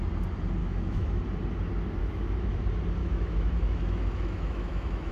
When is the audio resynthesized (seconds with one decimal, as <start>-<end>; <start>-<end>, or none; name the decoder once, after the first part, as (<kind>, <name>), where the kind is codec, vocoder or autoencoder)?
0.6-1.2 (autoencoder, DAC-VAE); 2.0-2.6; 3.0-5.1